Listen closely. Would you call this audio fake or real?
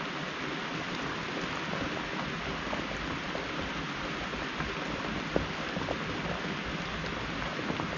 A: real